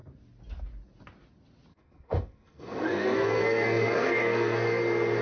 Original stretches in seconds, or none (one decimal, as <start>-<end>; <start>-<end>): 0.0-1.7; 4.8-5.2